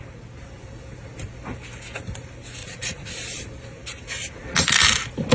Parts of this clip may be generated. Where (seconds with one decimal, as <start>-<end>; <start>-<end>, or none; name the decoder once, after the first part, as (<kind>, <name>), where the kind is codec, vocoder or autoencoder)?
2.6-3.1 (vocoder, Vocos)